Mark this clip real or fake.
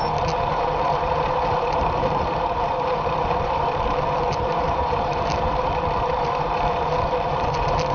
fake